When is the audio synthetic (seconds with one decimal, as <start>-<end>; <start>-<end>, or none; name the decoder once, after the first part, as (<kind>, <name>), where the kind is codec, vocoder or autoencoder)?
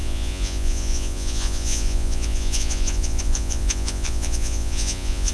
0.0-5.3 (vocoder, Vocos)